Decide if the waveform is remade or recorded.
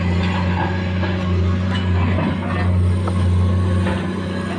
recorded